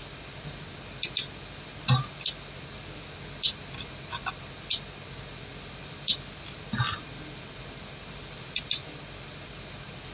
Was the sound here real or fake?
real